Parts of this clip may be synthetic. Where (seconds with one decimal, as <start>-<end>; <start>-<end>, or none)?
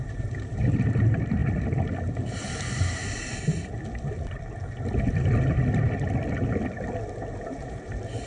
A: 0.0-1.4; 2.5-3.0; 7.4-8.3